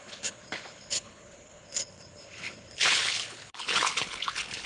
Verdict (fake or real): fake